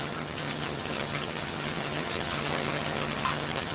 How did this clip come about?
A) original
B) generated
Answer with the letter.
B